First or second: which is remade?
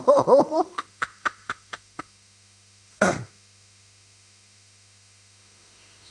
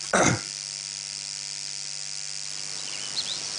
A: first